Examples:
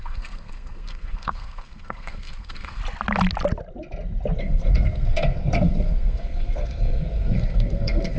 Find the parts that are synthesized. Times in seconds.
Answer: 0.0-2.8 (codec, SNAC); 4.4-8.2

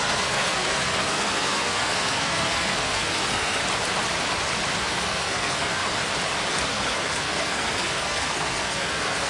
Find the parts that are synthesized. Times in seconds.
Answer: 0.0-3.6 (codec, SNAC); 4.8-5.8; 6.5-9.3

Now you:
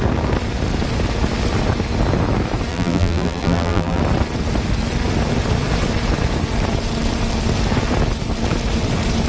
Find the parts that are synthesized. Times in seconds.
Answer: 2.7-4.0 (vocoder, BigVGAN v2)

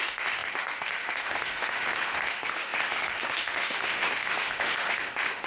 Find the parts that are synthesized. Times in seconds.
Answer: 0.0-5.5 (autoencoder, DAC-VAE)

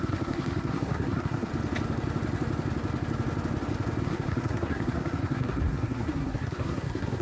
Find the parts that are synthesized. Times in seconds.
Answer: 0.0-1.5 (codec, SNAC); 4.0-7.2

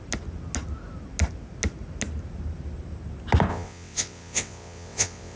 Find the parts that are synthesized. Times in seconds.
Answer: 3.5-5.4 (vocoder, WaveNeXt)